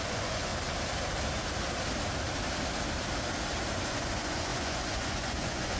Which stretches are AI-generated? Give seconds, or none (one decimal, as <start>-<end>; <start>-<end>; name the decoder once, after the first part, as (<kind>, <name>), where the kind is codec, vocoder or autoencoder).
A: 0.0-0.5 (vocoder, Vocos); 3.9-5.8